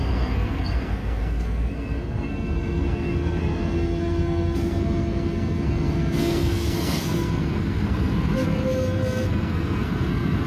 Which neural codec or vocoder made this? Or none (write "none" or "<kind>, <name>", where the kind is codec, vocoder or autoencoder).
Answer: codec, SNAC